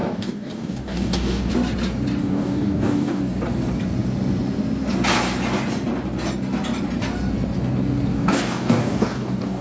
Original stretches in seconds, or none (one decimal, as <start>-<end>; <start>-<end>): 1.5-2.2; 3.2-8.1